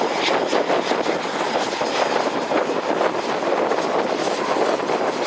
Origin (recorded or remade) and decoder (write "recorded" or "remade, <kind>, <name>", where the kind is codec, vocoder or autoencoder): recorded